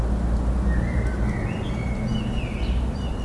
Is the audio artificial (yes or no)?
no